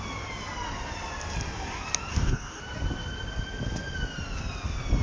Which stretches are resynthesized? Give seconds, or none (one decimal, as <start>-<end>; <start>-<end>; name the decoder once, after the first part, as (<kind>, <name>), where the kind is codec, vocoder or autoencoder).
2.1-2.6 (codec, DAC)